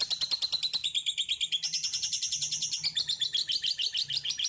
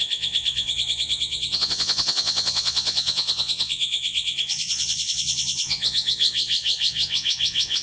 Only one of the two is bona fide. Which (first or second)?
first